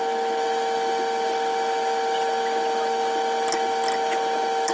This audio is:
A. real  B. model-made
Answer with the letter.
A